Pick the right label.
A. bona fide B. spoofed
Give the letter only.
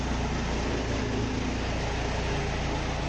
A